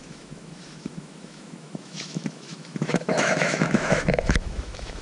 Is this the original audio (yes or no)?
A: no